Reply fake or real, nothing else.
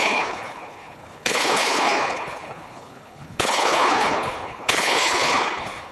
fake